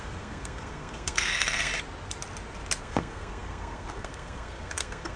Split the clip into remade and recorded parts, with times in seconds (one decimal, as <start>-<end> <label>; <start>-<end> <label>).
0.0-1.7 remade; 1.7-2.8 recorded; 2.8-5.2 remade